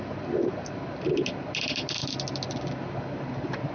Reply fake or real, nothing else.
real